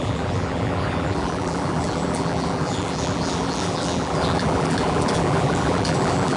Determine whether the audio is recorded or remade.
remade